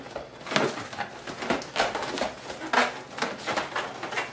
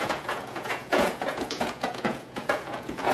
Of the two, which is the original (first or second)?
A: first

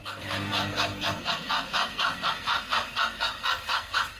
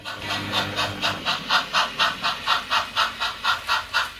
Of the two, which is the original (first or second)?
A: second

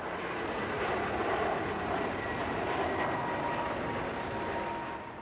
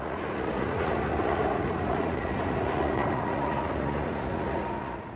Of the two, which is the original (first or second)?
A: first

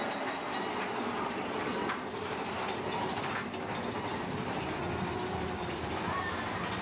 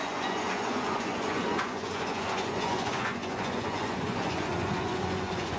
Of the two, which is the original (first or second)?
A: first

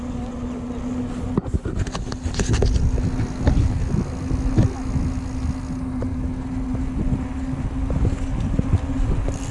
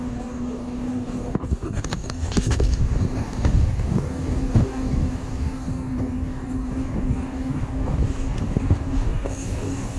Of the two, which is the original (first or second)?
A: first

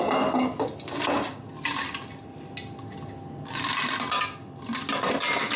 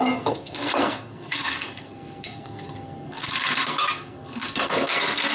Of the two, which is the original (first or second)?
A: first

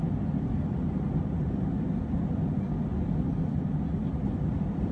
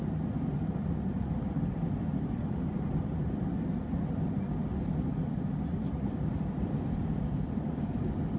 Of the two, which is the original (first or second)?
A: first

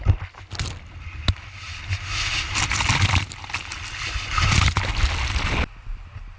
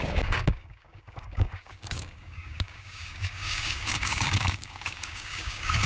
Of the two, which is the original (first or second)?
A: first